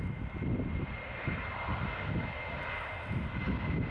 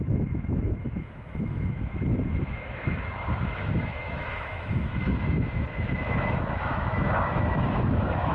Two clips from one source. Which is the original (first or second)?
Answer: first